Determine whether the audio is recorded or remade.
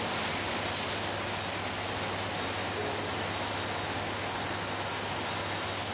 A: recorded